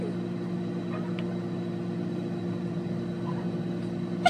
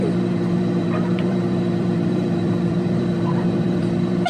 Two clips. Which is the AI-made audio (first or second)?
second